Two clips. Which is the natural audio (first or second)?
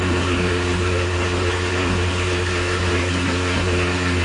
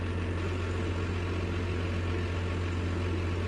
second